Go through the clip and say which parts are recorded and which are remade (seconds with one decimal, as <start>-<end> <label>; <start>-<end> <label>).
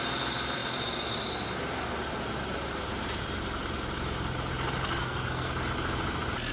0.0-5.0 recorded; 5.0-5.5 remade; 5.5-6.5 recorded